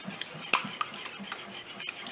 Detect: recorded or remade recorded